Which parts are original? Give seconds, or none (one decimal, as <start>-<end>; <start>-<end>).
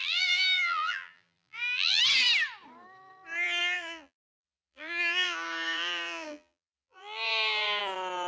2.0-3.6; 7.8-8.3